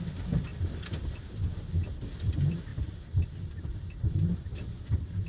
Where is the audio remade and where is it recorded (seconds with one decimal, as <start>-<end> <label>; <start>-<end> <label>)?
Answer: 0.0-5.3 recorded